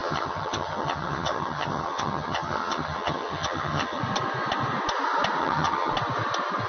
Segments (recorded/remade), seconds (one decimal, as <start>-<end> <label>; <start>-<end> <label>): 0.0-4.0 remade; 4.0-5.4 recorded; 5.4-5.9 remade; 5.9-6.7 recorded